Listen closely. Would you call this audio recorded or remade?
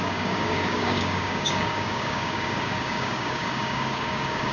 remade